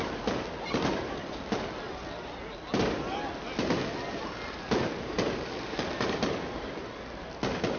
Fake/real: real